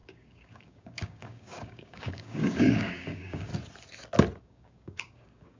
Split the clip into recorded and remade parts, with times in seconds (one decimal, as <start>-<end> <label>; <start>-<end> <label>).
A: 0.0-3.5 remade; 3.5-4.4 recorded; 4.4-5.6 remade